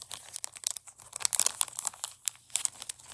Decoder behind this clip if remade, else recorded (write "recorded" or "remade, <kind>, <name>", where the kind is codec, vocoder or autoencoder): recorded